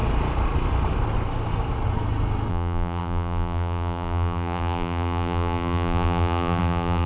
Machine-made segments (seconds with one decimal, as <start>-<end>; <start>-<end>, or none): 2.5-7.1